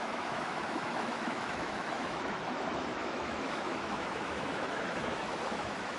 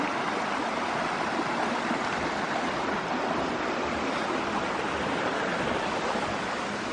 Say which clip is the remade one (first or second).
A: first